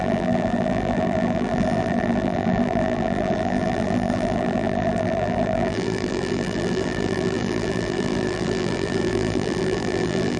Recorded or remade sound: remade